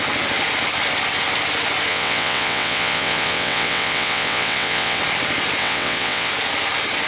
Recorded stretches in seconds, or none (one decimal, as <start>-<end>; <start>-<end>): 0.0-1.9; 5.0-5.6; 6.3-7.1